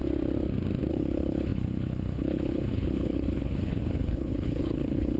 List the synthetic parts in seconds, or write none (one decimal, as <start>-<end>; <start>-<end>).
0.9-5.2